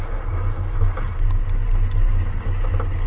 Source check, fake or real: real